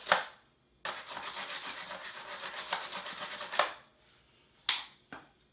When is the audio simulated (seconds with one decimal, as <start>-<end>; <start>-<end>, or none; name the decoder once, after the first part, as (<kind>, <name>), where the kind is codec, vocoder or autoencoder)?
none